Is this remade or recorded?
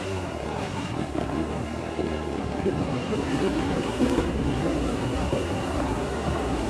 remade